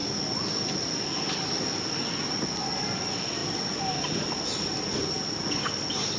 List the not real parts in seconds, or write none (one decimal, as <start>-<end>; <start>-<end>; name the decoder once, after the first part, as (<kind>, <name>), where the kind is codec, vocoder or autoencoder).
none